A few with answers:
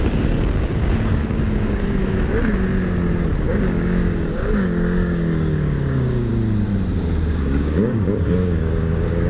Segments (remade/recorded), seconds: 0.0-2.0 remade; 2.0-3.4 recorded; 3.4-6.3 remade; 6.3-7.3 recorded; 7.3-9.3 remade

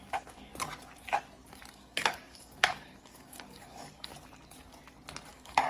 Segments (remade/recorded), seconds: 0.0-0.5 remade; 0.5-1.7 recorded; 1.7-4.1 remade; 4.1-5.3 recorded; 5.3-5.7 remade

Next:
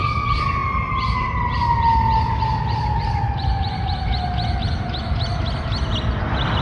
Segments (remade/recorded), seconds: 0.0-6.6 recorded

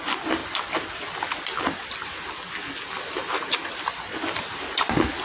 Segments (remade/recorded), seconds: 0.0-5.2 recorded